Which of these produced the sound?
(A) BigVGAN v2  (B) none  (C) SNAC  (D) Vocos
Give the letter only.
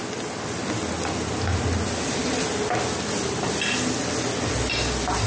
B